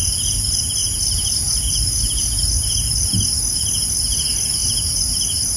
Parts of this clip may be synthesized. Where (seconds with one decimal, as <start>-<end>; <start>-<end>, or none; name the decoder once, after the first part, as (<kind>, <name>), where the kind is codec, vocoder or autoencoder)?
0.8-3.1 (vocoder, BigVGAN v2); 4.6-5.6